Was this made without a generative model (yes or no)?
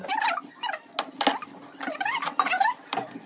yes